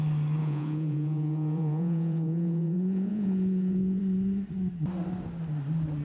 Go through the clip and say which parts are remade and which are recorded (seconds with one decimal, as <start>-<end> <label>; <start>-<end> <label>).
0.0-0.4 recorded; 0.4-4.0 remade; 4.0-6.0 recorded